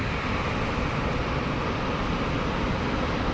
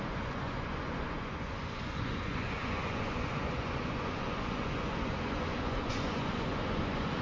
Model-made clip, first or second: second